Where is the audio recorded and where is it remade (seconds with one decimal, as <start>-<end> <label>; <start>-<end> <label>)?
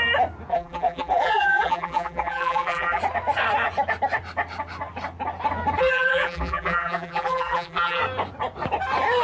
0.0-0.5 recorded; 0.5-3.0 remade; 3.0-5.8 recorded; 5.8-8.0 remade; 8.0-9.2 recorded